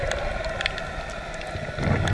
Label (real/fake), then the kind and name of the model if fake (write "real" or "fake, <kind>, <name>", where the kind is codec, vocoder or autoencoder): real